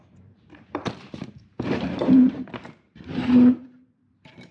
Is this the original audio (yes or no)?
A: no